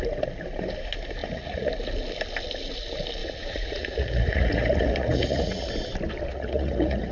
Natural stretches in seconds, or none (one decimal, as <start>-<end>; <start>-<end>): 0.0-1.2; 1.7-3.2; 5.7-6.3